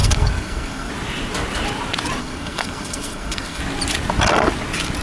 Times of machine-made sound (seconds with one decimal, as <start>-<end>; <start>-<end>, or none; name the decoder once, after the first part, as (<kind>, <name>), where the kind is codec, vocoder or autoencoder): 0.0-0.9 (codec, SNAC); 2.2-3.6